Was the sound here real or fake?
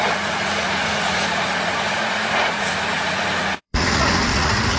fake